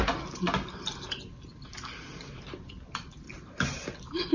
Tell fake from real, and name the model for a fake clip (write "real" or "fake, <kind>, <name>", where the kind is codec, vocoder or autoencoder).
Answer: real